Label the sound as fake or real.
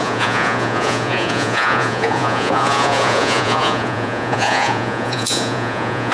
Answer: fake